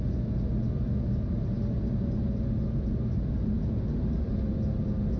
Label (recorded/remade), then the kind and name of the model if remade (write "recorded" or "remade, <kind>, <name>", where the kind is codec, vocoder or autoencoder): recorded